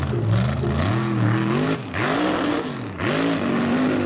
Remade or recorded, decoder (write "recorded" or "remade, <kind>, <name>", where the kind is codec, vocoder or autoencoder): recorded